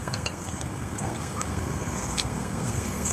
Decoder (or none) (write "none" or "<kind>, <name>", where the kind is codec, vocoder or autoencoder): codec, SNAC